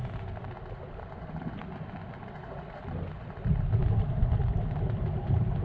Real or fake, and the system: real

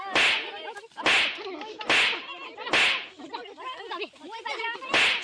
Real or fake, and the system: real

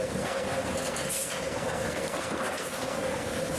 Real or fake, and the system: fake, codec, SNAC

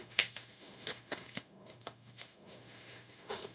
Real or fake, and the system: fake, autoencoder, DAC-VAE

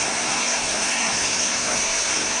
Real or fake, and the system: fake, codec, SNAC